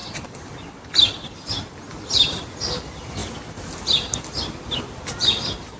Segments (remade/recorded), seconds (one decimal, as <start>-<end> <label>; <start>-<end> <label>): 0.0-5.8 recorded